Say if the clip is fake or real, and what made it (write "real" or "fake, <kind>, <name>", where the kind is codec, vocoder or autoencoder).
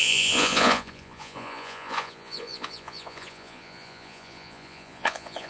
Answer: fake, vocoder, Vocos